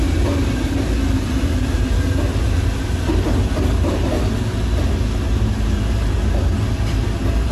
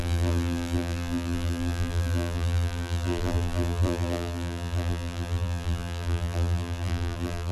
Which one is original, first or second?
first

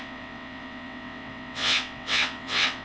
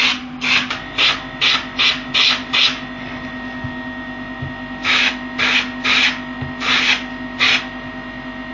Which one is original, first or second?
second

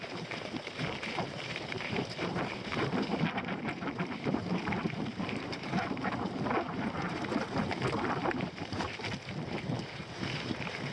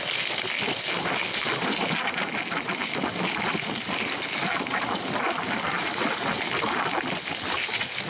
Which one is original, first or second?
second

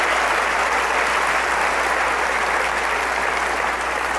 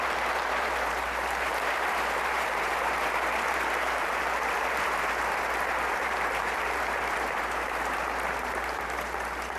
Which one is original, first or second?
first